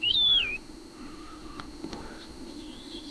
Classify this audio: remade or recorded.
remade